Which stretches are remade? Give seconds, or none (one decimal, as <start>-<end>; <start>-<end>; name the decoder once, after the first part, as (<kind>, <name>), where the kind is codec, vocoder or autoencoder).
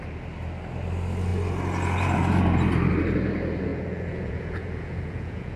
3.7-5.6 (vocoder, Vocos)